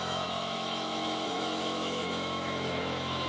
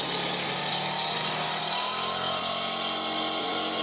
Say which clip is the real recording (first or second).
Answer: second